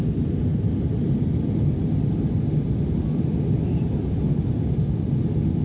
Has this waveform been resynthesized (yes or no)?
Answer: no